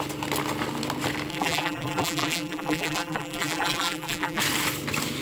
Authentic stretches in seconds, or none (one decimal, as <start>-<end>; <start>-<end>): 0.0-1.3; 4.4-5.2